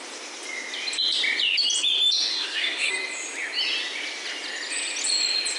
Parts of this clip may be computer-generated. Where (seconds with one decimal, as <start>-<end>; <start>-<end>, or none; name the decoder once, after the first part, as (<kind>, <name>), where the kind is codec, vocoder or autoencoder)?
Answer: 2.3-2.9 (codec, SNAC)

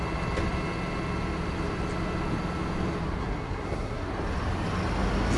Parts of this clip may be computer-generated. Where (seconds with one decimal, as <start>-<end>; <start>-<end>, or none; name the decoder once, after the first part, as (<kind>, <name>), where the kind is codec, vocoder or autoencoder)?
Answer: 3.2-4.1 (codec, SNAC)

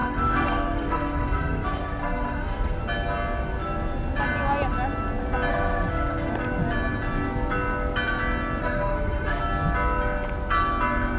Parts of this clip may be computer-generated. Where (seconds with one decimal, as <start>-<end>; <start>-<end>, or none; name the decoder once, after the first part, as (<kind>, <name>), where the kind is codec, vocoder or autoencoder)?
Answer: 0.0-2.8 (codec, SNAC); 5.5-6.3; 8.6-9.4

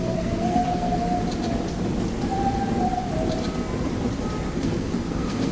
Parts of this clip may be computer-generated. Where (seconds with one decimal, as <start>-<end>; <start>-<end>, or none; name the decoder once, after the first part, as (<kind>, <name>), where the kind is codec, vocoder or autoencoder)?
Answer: 0.0-1.2 (codec, SNAC); 4.5-5.5